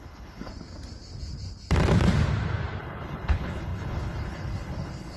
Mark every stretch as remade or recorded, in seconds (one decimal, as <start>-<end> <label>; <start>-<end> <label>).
0.0-0.5 remade; 0.5-2.8 recorded; 2.8-5.2 remade